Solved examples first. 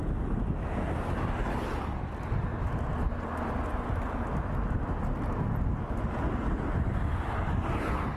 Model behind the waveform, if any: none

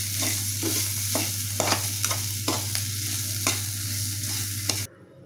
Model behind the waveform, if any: none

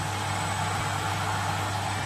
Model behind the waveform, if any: none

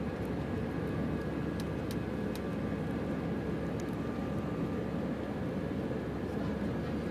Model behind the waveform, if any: none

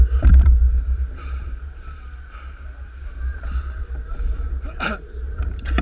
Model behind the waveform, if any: vocoder, BigVGAN v2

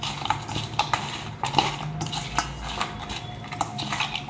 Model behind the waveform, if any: none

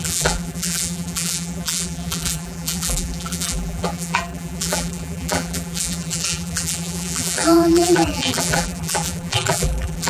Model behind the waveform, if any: vocoder, BigVGAN v2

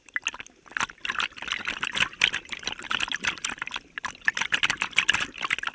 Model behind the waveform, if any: none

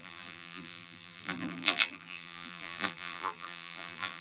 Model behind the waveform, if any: vocoder, BigVGAN v2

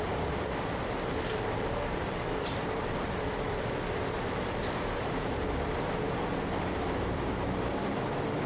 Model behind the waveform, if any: vocoder, BigVGAN v2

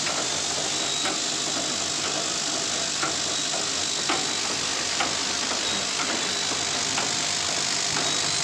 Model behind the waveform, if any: none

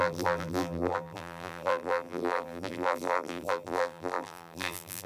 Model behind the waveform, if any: vocoder, BigVGAN v2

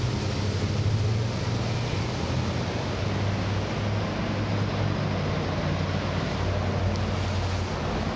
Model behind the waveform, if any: none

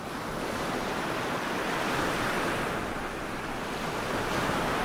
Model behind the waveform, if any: none